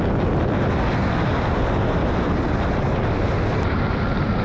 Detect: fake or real real